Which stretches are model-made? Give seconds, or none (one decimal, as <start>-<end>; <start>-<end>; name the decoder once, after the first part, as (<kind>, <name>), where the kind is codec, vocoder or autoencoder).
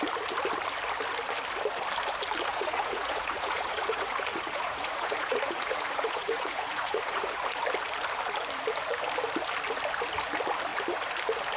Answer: 2.5-7.6 (vocoder, Vocos)